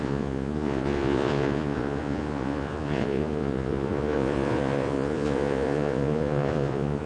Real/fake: fake